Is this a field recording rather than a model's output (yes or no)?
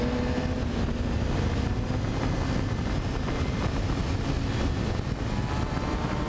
yes